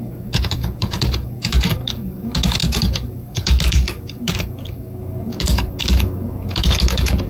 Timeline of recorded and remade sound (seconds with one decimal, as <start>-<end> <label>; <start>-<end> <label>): 0.0-7.3 remade